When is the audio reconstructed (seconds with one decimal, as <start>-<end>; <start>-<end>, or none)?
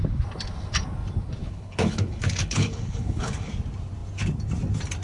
1.4-3.5